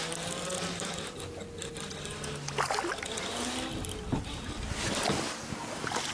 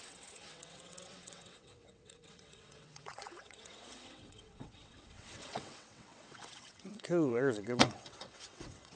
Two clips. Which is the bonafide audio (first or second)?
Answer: first